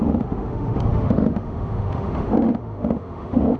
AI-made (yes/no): yes